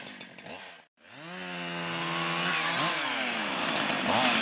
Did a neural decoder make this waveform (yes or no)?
no